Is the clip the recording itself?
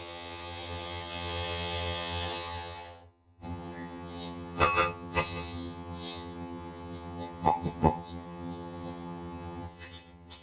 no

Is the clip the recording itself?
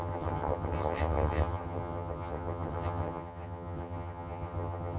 no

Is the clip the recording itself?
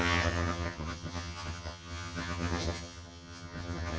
no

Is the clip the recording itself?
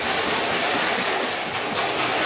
yes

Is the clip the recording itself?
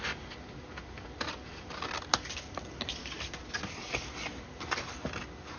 yes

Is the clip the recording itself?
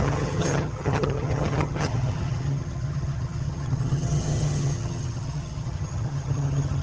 no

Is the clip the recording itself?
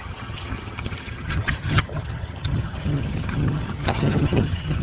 no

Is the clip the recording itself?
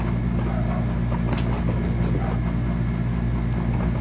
yes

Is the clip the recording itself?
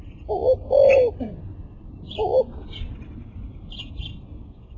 yes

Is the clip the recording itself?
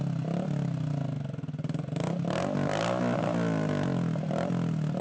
yes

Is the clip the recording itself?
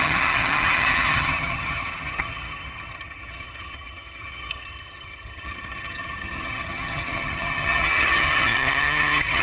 no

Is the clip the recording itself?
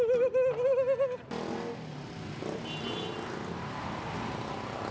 yes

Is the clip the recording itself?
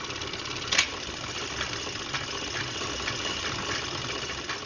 yes